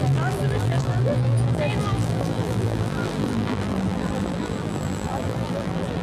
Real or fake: fake